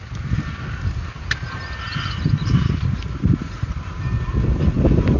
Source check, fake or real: real